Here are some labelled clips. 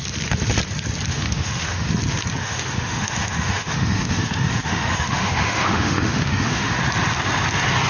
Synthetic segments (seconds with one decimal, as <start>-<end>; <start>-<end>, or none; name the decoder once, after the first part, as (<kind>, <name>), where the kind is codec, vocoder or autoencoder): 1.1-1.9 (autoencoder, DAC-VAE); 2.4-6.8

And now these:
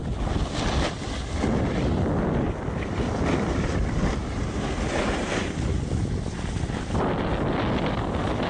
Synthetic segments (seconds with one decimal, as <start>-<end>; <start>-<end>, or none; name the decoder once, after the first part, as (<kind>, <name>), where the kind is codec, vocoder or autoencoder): none

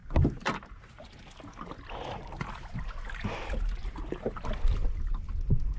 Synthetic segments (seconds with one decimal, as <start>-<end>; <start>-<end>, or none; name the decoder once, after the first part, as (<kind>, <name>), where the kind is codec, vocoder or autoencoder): none